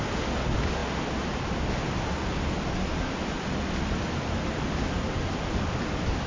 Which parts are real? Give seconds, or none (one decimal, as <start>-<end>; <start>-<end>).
0.0-6.3